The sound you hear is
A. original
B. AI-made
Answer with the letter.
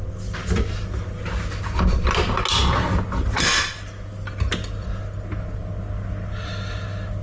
A